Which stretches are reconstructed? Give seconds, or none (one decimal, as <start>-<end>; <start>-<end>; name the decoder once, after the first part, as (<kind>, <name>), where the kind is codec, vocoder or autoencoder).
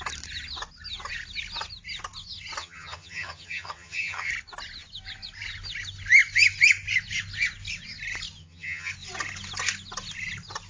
2.6-4.3 (vocoder, HiFi-GAN); 8.4-8.9